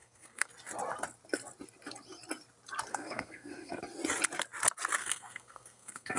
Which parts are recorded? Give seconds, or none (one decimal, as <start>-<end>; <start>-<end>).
0.5-2.9; 3.8-5.0